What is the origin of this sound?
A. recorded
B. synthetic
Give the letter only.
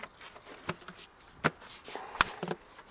A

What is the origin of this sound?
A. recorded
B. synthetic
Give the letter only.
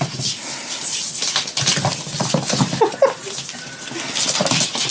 A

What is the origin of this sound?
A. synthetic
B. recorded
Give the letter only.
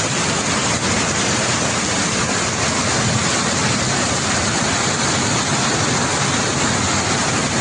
B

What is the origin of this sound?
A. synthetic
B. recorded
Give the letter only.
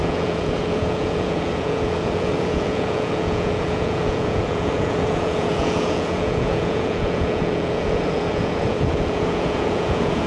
A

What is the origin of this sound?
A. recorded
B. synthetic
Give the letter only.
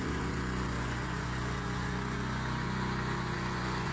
B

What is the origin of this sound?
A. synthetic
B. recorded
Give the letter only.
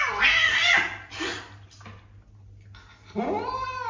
B